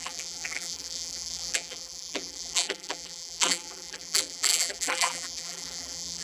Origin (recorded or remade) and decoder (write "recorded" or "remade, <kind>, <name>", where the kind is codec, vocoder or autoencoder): remade, vocoder, BigVGAN v2